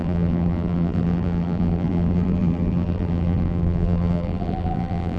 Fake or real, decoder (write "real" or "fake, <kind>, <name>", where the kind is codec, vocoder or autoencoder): fake, vocoder, BigVGAN v2